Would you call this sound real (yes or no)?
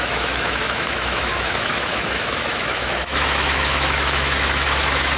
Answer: no